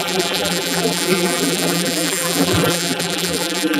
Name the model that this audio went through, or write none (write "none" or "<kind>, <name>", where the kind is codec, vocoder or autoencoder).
vocoder, BigVGAN v2